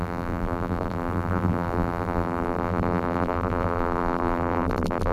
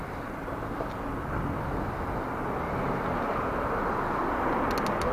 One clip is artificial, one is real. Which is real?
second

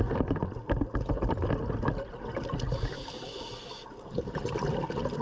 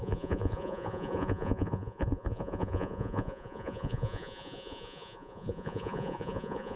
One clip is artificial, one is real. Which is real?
first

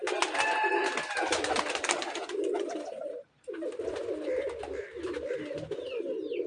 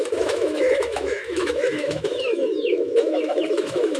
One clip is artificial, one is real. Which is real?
first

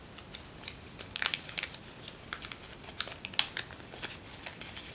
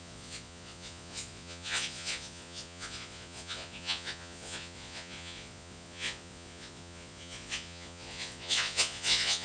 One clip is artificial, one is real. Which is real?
first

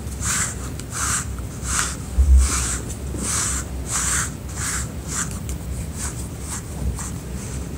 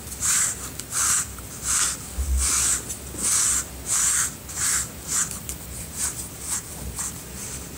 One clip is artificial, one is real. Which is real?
second